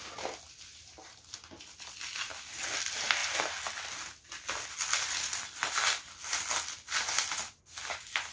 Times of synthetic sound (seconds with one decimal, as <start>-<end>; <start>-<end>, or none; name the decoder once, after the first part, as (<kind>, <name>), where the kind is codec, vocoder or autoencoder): none